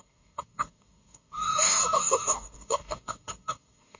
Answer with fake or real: fake